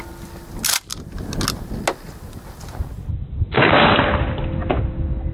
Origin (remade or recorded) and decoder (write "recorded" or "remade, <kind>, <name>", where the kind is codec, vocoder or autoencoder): recorded